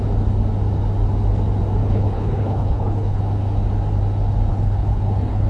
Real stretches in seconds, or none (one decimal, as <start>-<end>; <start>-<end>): 0.0-1.8; 3.2-4.5